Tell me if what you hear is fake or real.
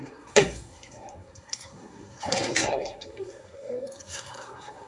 fake